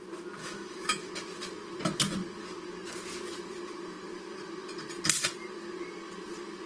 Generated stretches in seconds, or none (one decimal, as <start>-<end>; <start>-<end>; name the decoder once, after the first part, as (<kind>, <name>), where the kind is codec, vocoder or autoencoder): 0.4-1.1 (autoencoder, DAC-VAE)